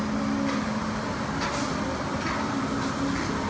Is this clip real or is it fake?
real